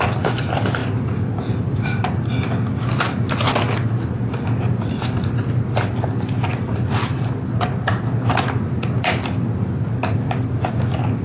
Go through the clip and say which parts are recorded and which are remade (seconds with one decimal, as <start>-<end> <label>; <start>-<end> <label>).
0.0-11.2 recorded